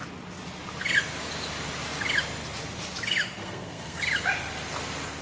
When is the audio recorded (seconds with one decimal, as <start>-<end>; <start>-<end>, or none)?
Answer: 0.0-3.4; 4.0-5.2